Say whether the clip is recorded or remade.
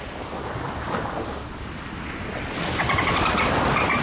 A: recorded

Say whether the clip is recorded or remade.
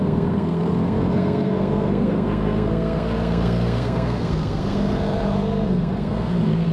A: remade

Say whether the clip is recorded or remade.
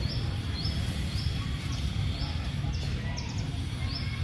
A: recorded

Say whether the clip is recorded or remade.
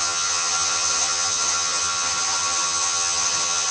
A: remade